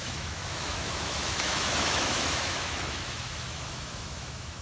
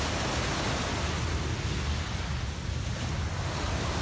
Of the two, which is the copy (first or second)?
first